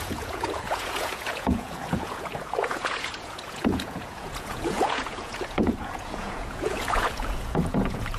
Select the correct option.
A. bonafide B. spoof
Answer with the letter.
B